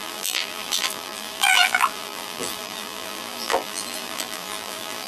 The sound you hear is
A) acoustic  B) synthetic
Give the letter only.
B